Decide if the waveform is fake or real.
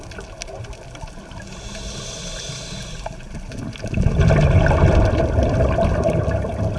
real